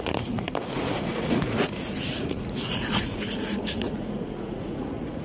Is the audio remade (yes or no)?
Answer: yes